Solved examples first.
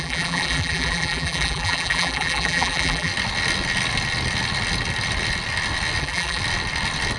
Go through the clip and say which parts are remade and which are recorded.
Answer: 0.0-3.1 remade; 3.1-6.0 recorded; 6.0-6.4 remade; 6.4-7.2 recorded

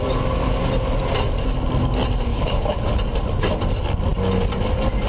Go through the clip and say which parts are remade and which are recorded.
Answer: 0.0-2.3 recorded; 2.3-2.8 remade; 2.8-5.1 recorded